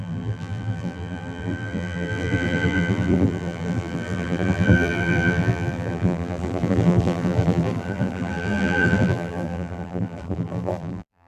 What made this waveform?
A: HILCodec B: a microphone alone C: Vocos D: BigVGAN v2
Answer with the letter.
D